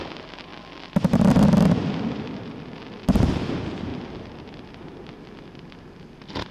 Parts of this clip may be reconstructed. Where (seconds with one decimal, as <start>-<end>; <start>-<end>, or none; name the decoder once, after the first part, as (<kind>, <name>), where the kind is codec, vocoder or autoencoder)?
none